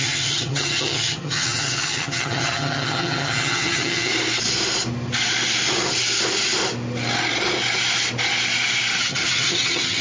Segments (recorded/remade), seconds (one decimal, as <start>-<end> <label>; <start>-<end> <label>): 0.0-4.1 remade; 4.1-9.0 recorded; 9.0-10.0 remade